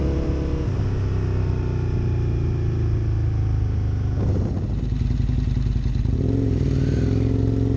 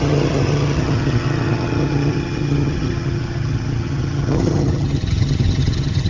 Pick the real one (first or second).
first